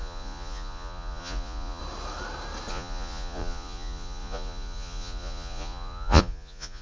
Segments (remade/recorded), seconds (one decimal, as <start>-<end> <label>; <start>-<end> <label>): 0.0-1.8 remade; 1.8-2.7 recorded; 2.7-6.8 remade